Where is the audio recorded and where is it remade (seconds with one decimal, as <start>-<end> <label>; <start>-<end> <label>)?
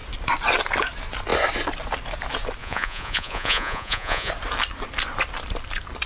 0.0-2.6 recorded; 2.6-4.3 remade; 4.3-6.1 recorded